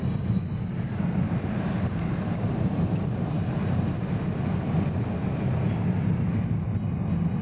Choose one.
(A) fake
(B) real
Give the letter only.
B